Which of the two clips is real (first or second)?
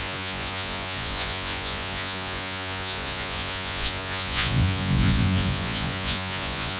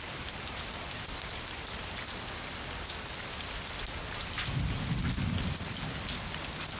second